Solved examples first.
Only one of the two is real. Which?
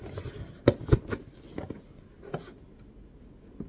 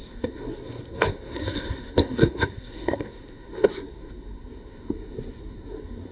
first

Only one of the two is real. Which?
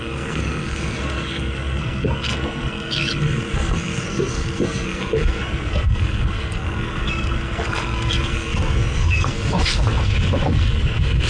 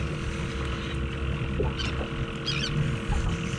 second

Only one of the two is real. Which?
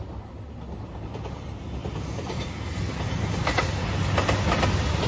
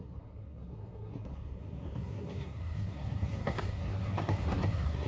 first